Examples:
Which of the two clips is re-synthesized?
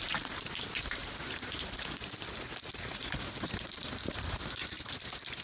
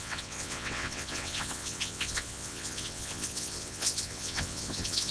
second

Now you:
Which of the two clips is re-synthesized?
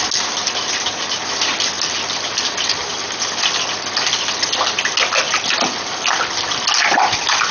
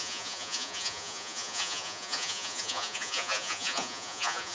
second